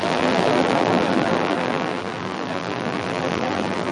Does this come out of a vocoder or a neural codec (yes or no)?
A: yes